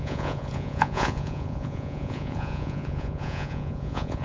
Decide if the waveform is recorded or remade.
remade